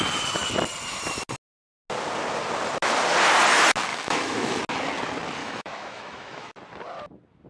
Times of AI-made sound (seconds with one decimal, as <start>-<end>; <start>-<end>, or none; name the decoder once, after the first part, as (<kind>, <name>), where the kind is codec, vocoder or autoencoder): 3.9-4.6 (autoencoder, DAC-VAE); 5.4-6.5